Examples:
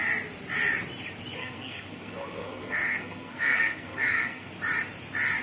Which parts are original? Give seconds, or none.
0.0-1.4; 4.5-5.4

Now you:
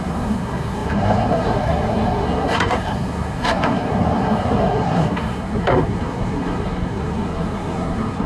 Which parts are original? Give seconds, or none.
none

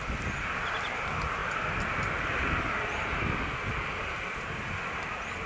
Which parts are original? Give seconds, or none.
0.0-5.5